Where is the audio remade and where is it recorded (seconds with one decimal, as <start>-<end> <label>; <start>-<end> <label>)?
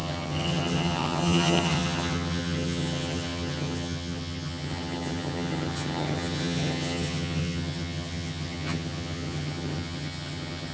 0.0-10.7 remade